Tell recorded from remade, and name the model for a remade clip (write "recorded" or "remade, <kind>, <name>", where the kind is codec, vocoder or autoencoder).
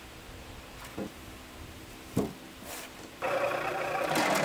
recorded